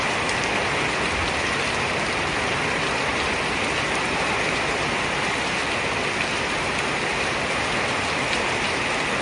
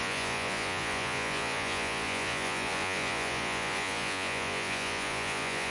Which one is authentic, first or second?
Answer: first